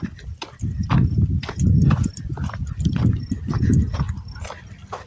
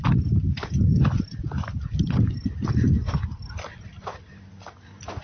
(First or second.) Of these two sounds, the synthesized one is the second